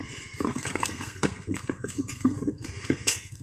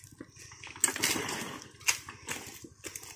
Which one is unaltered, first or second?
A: second